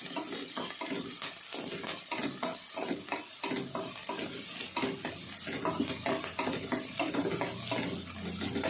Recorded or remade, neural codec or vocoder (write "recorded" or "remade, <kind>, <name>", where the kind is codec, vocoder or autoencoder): recorded